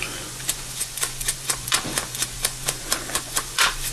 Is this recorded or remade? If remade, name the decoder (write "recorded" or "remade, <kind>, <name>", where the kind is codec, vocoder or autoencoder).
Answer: remade, vocoder, Vocos